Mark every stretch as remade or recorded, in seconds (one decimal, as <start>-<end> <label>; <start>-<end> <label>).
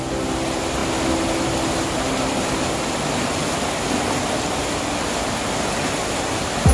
0.0-6.7 recorded